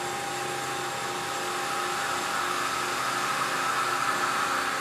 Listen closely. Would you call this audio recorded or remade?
recorded